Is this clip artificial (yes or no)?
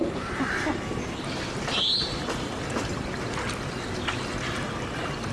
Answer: no